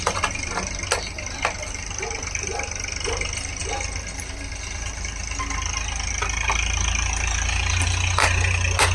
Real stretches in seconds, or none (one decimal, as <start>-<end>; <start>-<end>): 0.0-8.9